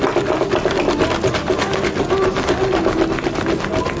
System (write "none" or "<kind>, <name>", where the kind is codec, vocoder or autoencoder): none